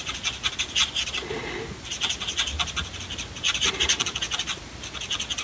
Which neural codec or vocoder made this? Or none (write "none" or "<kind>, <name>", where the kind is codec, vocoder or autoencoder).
none